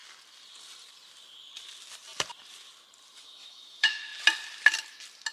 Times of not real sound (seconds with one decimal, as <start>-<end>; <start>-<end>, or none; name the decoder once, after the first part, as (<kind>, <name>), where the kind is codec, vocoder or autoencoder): 3.2-4.1 (autoencoder, DAC-VAE)